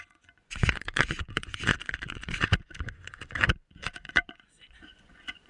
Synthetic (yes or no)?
yes